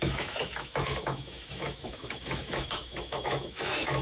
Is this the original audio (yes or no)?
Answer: no